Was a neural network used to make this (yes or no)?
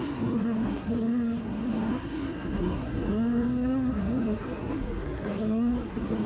yes